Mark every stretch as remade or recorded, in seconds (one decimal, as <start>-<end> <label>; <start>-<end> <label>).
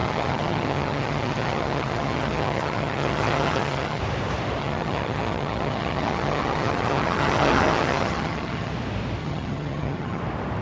0.0-4.0 remade; 4.0-4.6 recorded; 4.6-8.7 remade; 8.7-9.2 recorded; 9.2-10.2 remade; 10.2-10.6 recorded